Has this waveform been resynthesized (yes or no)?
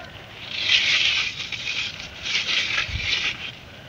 yes